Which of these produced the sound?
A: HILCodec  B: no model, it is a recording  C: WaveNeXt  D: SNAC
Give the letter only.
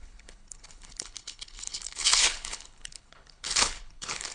A